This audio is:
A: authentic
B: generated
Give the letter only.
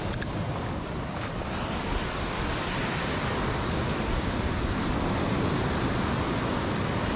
A